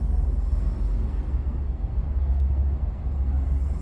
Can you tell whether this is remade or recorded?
remade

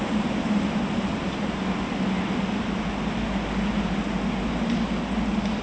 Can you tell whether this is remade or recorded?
recorded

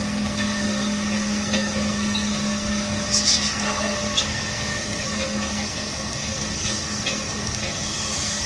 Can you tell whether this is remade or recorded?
remade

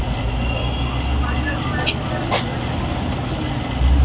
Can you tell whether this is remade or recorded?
recorded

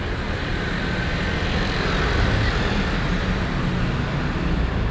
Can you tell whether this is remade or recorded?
recorded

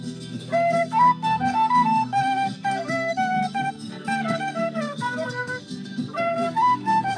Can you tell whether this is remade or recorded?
remade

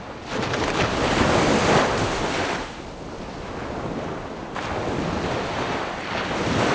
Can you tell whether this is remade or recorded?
recorded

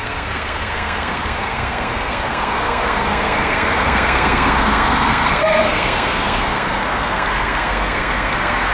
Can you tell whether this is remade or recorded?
remade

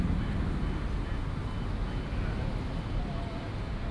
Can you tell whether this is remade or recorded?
recorded